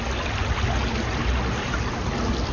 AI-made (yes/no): no